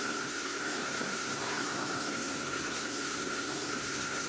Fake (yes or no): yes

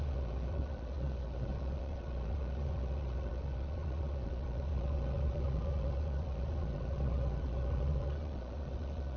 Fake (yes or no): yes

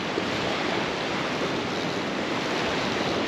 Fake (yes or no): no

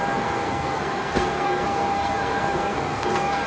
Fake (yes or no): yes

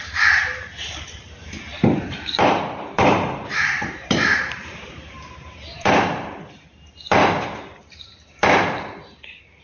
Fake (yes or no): yes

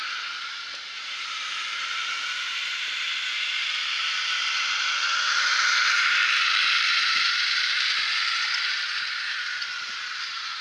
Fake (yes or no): yes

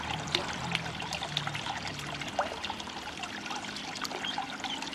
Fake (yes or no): no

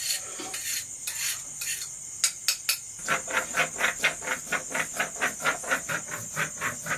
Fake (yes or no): no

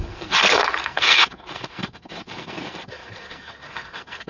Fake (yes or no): yes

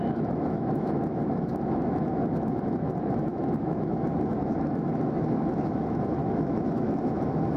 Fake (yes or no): yes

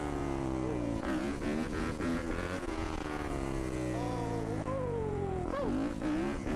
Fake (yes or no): yes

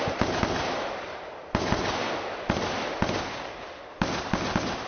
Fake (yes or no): no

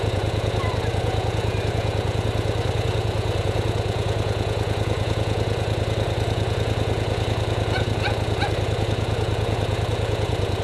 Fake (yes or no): yes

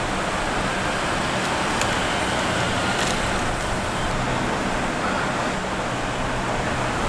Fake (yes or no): no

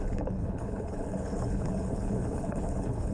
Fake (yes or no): yes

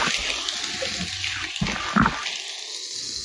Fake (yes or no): no